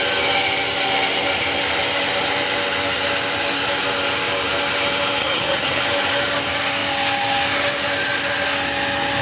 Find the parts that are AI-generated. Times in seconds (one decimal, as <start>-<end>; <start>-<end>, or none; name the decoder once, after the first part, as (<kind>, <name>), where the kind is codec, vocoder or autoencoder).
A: 5.2-5.8 (vocoder, HiFi-GAN)